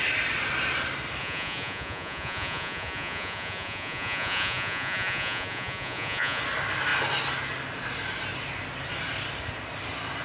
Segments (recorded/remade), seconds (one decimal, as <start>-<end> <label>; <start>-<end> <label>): 0.0-1.2 recorded; 1.2-6.4 remade; 6.4-10.2 recorded